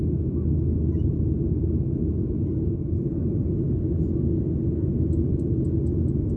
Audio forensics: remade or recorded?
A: recorded